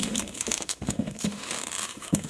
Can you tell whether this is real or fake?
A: fake